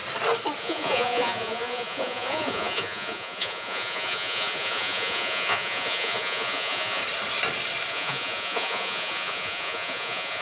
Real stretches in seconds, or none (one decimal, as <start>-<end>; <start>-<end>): 0.0-0.6; 7.0-7.9